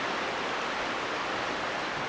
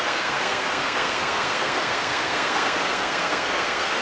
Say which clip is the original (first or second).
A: first